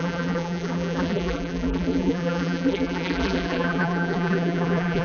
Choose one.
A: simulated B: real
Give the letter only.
A